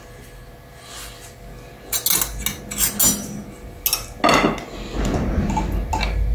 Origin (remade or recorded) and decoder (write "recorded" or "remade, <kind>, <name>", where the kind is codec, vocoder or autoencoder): recorded